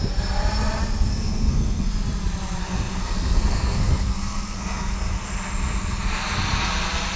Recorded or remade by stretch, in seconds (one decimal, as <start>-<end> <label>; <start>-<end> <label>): 0.0-1.1 recorded; 1.1-1.9 remade; 1.9-2.6 recorded; 2.6-5.3 remade; 5.3-7.2 recorded